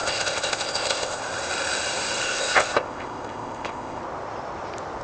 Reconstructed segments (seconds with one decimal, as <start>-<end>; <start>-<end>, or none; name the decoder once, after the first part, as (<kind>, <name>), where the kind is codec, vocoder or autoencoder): 0.0-1.2 (codec, ZipCodec); 2.2-4.0